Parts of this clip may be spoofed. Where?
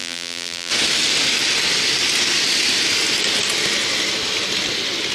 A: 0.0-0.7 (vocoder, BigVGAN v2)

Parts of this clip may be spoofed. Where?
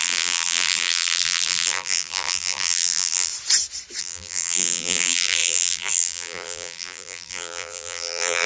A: 0.0-3.3 (vocoder, BigVGAN v2); 4.0-8.5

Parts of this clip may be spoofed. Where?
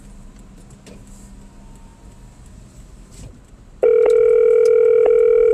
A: none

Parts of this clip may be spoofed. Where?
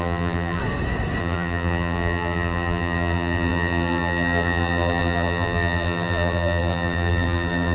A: 0.0-0.6 (vocoder, BigVGAN v2); 1.2-7.7